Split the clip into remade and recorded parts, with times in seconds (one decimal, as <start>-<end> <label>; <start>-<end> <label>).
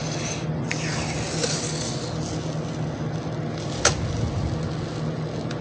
0.0-5.6 recorded